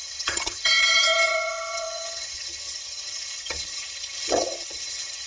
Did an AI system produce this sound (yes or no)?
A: yes